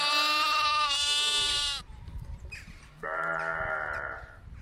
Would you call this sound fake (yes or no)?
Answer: yes